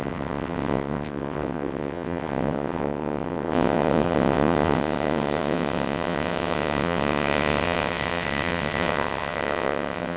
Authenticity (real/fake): fake